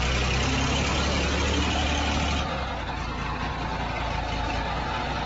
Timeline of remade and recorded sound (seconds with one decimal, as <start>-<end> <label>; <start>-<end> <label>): 0.0-5.3 recorded

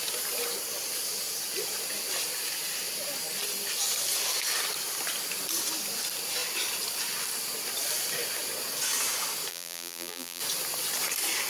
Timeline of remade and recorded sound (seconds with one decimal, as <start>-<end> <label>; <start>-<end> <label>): 0.0-9.5 recorded; 9.5-10.4 remade; 10.4-11.5 recorded

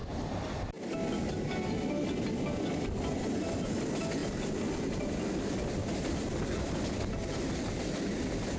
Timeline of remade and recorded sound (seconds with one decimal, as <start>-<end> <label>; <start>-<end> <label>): 0.0-8.6 recorded